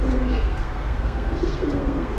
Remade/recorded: remade